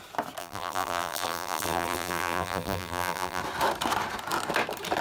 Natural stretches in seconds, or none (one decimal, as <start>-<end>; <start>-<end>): 0.0-0.4; 3.4-5.0